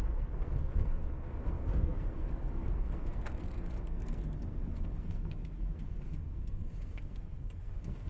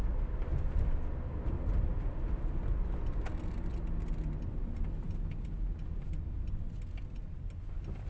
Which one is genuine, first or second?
second